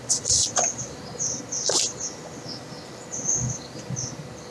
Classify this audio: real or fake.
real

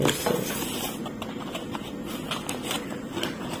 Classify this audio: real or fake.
real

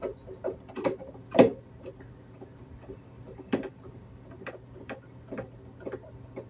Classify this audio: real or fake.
fake